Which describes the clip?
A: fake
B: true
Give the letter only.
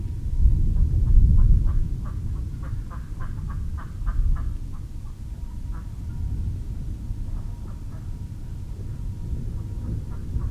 B